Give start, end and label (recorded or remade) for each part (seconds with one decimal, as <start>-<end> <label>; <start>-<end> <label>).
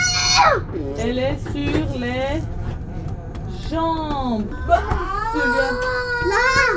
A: 0.0-6.8 recorded